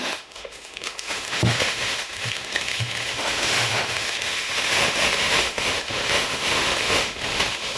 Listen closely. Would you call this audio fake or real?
fake